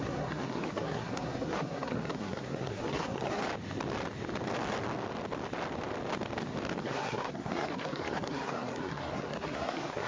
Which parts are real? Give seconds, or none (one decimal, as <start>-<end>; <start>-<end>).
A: 3.4-6.8

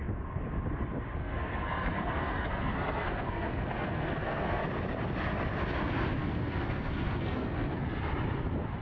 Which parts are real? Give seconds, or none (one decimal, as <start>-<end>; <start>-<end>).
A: 0.0-1.2; 4.6-6.2; 7.8-8.8

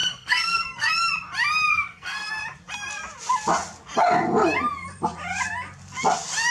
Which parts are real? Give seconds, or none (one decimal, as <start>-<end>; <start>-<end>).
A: 0.9-1.7; 2.3-6.5

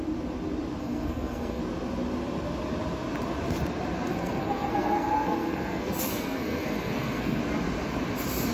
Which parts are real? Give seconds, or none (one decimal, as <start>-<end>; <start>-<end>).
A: 0.0-0.8; 1.6-4.1; 7.4-8.5

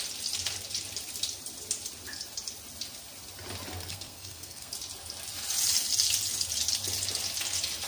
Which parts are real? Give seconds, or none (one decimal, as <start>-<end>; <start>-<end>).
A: 0.0-3.9; 4.7-7.9

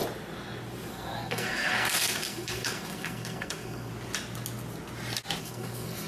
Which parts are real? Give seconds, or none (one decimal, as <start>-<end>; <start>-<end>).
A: 0.0-0.9; 3.9-5.4

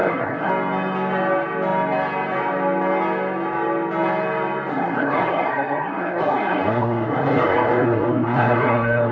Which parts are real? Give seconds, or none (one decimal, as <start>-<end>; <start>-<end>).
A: 0.5-4.7